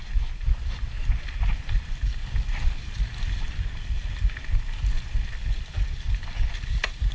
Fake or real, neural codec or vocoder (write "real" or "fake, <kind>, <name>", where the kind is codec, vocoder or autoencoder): real